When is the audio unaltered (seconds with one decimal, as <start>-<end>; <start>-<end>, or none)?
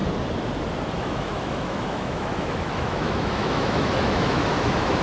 0.0-0.9